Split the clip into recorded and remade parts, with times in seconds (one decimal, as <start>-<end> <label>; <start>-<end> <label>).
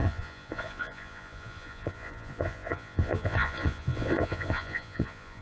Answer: 0.0-5.4 remade